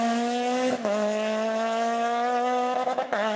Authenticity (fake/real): fake